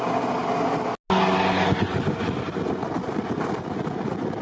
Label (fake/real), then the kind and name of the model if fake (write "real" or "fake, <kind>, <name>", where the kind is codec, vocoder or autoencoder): real